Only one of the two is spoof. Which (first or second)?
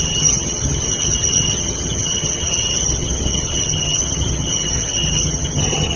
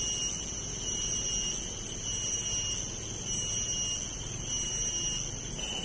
first